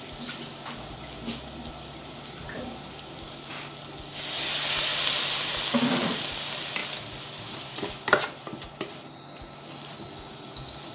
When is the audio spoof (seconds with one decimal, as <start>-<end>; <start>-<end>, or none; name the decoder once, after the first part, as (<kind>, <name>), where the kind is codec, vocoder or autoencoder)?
none